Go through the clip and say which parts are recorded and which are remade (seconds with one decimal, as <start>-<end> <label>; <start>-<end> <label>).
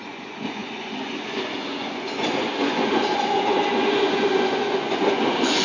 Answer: 0.0-5.6 remade